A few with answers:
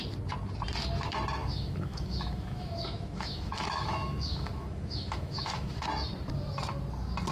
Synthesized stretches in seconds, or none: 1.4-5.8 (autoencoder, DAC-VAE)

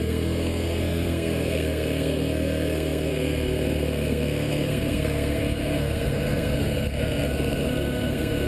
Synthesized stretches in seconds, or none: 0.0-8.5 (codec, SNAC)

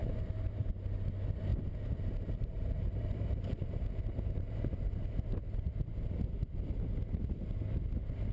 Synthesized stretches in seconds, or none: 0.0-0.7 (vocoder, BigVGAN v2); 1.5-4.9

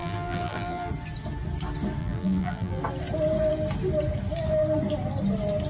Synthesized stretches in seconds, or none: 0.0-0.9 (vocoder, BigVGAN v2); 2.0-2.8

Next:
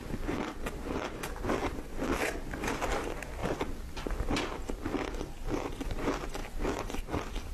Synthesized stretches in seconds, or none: none

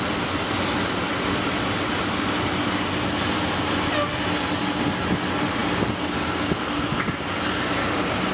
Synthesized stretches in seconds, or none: none